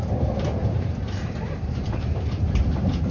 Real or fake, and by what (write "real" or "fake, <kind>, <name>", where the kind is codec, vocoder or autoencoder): fake, vocoder, BigVGAN v2